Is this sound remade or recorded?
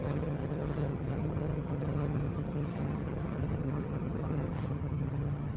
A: remade